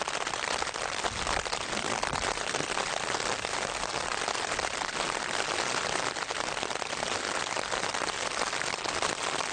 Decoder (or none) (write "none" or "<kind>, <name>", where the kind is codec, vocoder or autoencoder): none